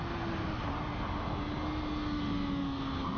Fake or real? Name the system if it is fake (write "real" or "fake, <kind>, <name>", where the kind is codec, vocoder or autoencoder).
real